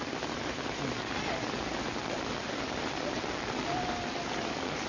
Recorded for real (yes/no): yes